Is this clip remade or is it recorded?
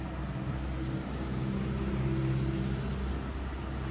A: recorded